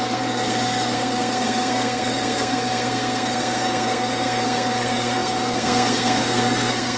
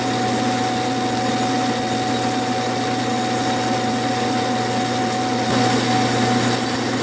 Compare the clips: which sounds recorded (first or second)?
second